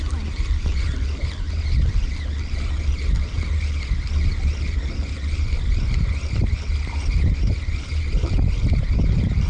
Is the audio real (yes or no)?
yes